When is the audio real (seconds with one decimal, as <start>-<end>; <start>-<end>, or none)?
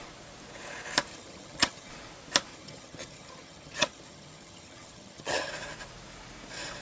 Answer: 0.0-1.1; 1.9-2.5; 5.5-6.8